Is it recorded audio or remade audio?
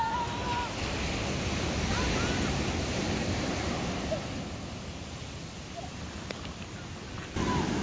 recorded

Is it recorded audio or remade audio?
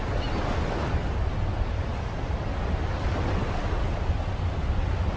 recorded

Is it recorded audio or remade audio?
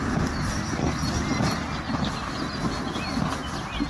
recorded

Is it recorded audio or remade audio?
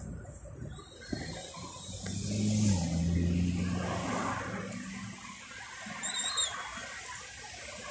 recorded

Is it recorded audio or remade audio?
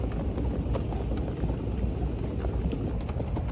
recorded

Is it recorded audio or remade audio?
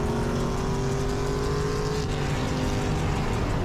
recorded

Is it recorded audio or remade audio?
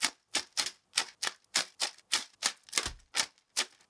recorded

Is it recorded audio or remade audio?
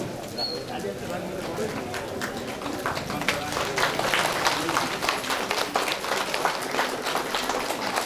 recorded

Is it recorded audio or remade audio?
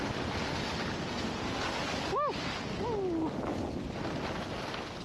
recorded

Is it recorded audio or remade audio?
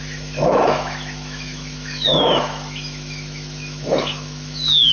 remade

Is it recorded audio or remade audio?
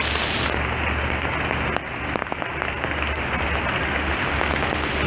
recorded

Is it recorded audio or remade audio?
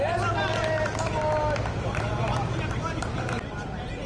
recorded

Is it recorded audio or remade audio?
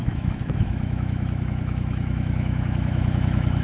remade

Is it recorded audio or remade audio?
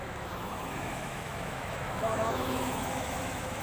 remade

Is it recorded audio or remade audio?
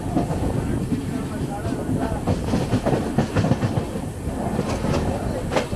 recorded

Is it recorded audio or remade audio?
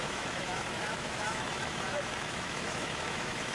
remade